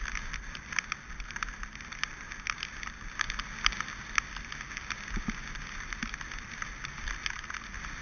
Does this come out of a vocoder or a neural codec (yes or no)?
no